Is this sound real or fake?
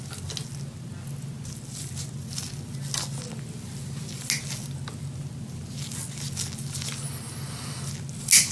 real